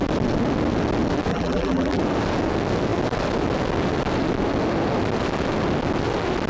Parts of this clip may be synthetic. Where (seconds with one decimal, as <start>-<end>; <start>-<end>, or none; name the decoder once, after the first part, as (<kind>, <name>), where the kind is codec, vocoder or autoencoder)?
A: 1.3-2.0 (vocoder, BigVGAN v2)